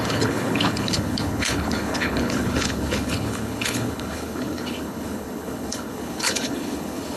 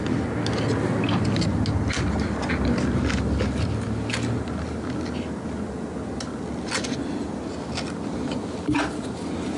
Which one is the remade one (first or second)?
first